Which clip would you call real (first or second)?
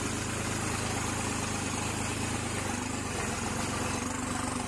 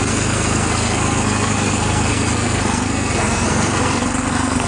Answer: first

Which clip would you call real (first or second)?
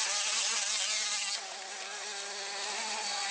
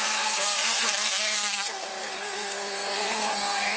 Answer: first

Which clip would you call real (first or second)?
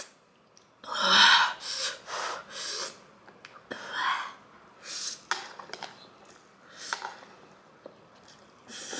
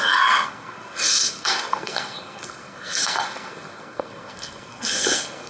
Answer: first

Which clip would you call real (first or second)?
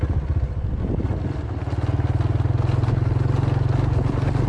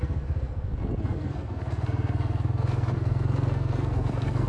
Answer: first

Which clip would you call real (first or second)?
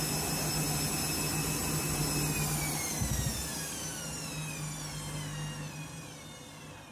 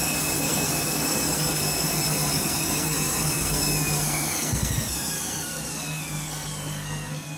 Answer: first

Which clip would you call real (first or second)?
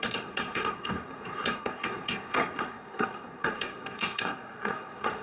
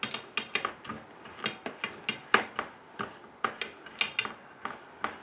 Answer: second